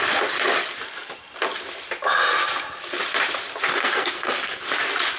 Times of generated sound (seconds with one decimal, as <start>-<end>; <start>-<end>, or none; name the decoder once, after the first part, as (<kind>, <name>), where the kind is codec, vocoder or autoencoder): 3.7-4.6 (codec, SNAC)